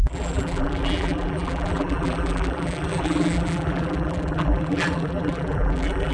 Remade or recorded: remade